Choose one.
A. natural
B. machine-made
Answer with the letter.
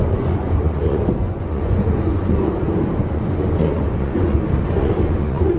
B